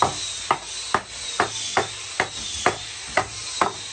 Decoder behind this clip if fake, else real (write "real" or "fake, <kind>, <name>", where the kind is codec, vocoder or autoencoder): real